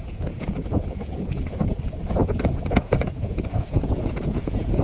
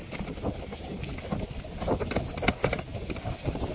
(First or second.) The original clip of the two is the second